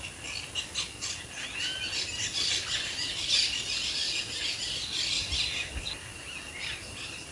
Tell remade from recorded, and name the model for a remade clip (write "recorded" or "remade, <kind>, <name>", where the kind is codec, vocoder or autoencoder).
recorded